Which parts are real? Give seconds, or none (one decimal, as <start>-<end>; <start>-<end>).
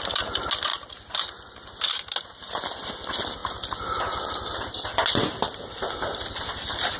0.0-7.0